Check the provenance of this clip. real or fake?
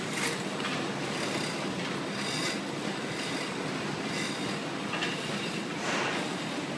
real